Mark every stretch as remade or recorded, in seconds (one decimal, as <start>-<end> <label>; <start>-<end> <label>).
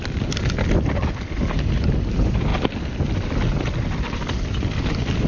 0.0-5.3 recorded